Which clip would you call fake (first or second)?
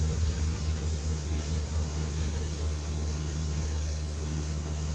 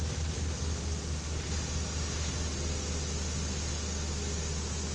first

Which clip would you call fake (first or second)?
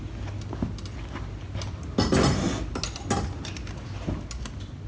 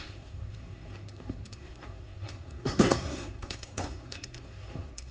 second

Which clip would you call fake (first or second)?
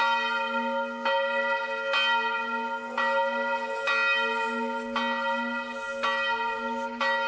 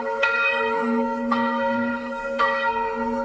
second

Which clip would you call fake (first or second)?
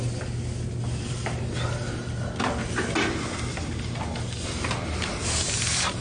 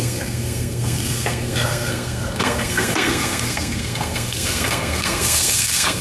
second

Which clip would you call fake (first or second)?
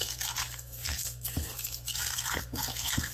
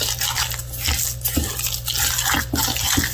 first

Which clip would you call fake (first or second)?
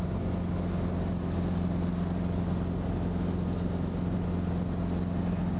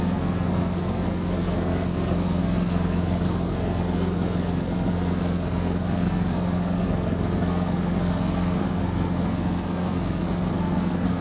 second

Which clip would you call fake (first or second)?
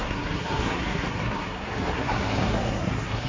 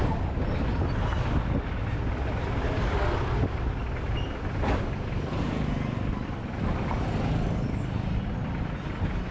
first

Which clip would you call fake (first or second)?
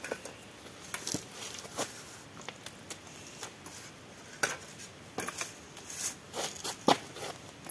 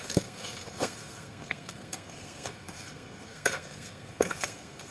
second